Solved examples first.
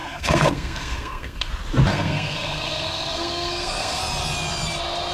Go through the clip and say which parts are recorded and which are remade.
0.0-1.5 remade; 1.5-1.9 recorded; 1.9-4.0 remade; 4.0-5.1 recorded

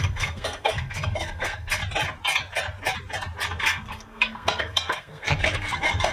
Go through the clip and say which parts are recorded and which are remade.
0.0-1.8 remade; 1.8-3.6 recorded; 3.6-6.1 remade

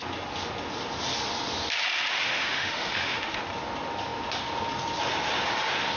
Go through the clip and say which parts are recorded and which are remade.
0.0-2.1 recorded; 2.1-3.4 remade; 3.4-6.0 recorded

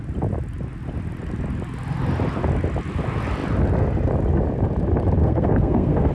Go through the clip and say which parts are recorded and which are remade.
0.0-5.2 recorded; 5.2-6.1 remade

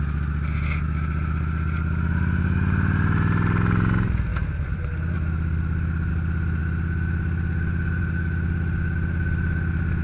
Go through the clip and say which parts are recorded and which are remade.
0.0-10.0 recorded

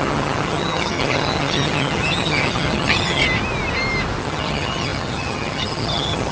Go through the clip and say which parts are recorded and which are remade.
0.0-3.2 remade; 3.2-4.2 recorded; 4.2-6.3 remade

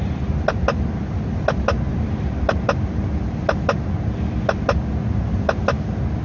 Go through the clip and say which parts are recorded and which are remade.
0.0-6.2 recorded

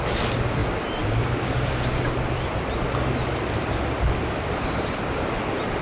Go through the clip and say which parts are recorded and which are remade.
0.0-5.8 recorded